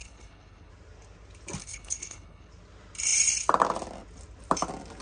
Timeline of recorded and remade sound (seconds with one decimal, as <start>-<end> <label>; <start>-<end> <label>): 0.0-0.7 remade; 0.7-1.6 recorded; 1.6-2.5 remade; 2.5-5.0 recorded